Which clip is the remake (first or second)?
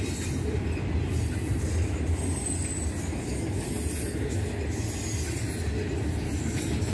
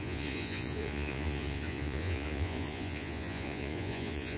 second